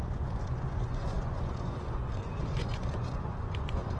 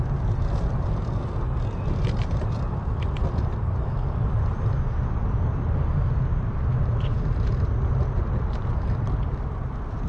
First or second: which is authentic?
second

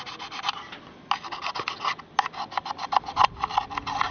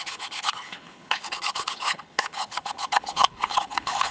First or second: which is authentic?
first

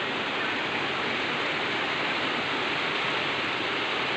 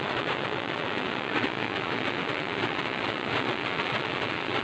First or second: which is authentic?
first